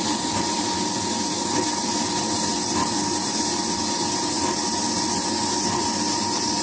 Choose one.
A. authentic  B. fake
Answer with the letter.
A